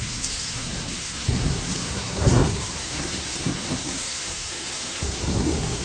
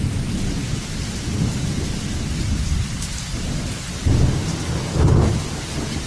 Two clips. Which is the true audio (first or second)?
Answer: second